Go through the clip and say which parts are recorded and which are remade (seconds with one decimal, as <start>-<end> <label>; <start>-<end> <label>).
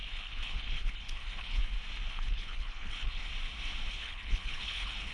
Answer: 0.0-1.6 remade; 1.6-2.1 recorded; 2.1-3.3 remade; 3.3-3.9 recorded; 3.9-5.1 remade